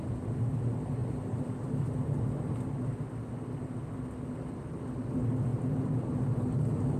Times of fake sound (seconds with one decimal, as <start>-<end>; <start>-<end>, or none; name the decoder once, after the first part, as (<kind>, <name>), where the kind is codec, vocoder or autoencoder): none